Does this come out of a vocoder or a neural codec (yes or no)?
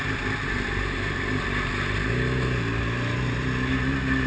no